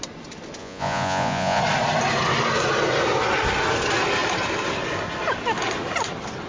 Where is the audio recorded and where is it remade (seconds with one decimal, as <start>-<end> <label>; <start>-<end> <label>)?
0.0-0.6 recorded; 0.6-1.6 remade; 1.6-6.5 recorded